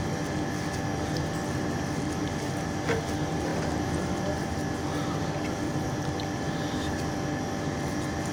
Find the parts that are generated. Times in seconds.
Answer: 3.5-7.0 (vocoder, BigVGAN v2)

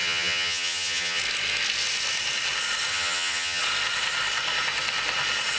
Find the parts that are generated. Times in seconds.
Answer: 0.0-1.2 (vocoder, HiFi-GAN); 2.9-3.6

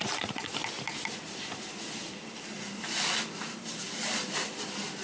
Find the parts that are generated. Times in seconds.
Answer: 0.0-0.6 (vocoder, BigVGAN v2); 3.6-5.0

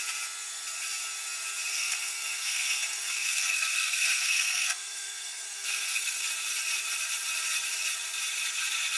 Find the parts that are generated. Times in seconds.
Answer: 1.7-6.3 (codec, SNAC)

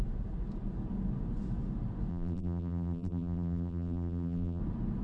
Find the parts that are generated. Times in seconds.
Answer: 2.1-4.6 (vocoder, BigVGAN v2)

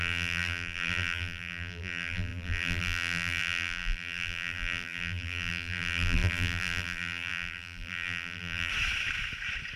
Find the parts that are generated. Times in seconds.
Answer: 0.0-8.7 (vocoder, BigVGAN v2)

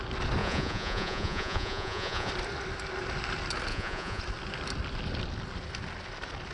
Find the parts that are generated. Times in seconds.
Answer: 0.4-2.3 (vocoder, Vocos); 3.7-4.2